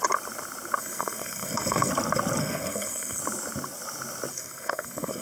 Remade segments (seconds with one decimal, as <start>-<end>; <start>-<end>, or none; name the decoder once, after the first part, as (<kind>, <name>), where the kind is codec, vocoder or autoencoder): 0.8-1.9 (codec, SNAC); 2.4-3.2; 4.3-5.2